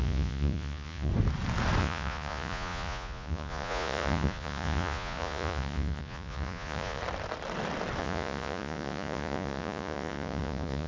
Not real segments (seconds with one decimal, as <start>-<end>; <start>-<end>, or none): 0.0-1.1; 1.8-7.0; 8.0-10.9